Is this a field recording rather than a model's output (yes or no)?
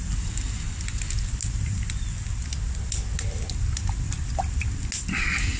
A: yes